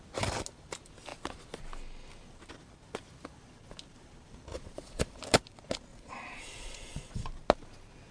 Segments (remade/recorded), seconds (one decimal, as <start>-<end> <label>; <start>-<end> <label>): 0.0-4.5 recorded; 4.5-5.2 remade; 5.2-5.9 recorded; 5.9-7.3 remade; 7.3-8.1 recorded